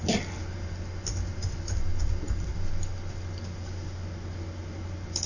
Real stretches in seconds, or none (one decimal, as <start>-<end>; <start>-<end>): 0.0-5.3